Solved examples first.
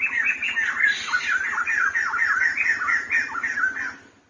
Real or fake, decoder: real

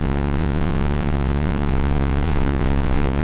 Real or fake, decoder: fake, vocoder, WaveNeXt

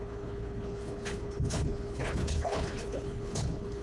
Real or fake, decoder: fake, codec, HILCodec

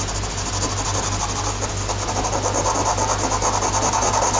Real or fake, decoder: real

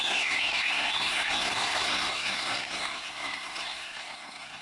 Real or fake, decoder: fake, codec, SNAC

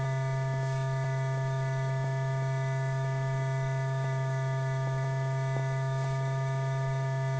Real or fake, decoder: fake, autoencoder, DAC-VAE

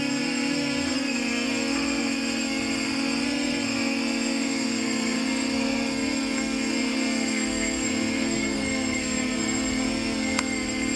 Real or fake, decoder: fake, codec, SNAC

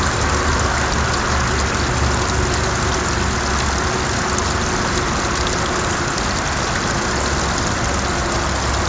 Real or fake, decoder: real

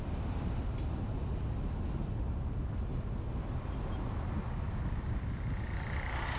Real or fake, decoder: real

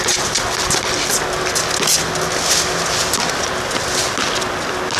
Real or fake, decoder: real